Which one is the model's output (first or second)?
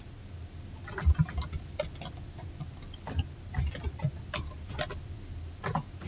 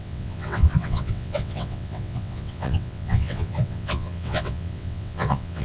second